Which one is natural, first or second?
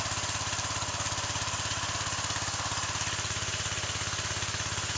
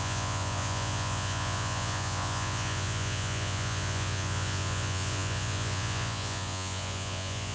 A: first